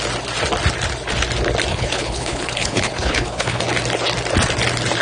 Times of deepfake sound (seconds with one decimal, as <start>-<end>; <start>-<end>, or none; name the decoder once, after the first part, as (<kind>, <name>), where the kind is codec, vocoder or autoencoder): 1.7-3.6 (codec, HILCodec)